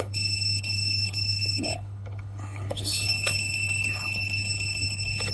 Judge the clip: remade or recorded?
remade